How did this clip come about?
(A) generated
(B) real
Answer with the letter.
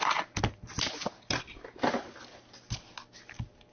B